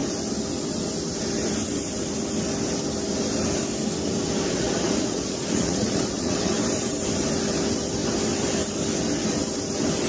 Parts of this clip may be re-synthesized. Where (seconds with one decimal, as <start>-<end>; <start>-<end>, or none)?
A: 4.5-6.5